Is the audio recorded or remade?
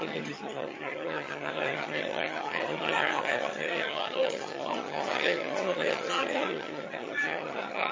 remade